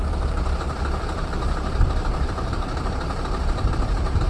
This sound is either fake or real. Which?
fake